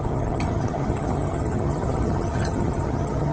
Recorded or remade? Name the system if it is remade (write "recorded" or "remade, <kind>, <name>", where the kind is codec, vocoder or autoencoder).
remade, vocoder, HiFi-GAN